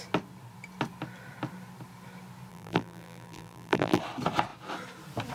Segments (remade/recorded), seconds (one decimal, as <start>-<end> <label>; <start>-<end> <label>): 0.0-2.5 recorded; 2.5-4.0 remade; 4.0-5.3 recorded